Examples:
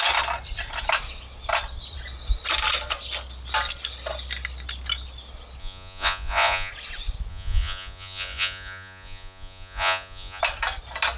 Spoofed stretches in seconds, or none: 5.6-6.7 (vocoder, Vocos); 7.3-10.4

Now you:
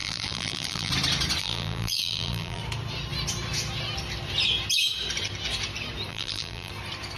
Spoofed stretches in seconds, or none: 0.0-0.9 (vocoder, BigVGAN v2); 1.4-2.6; 6.1-6.7

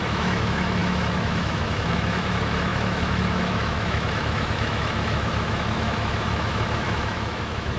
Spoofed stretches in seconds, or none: 0.0-7.8 (autoencoder, DAC-VAE)

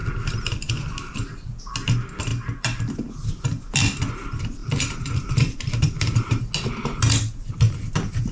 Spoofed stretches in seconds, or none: none

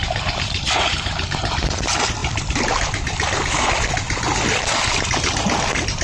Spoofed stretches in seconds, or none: 0.0-1.6 (vocoder, BigVGAN v2)